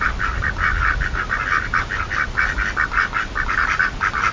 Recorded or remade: recorded